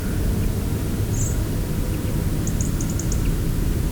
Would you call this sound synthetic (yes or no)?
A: no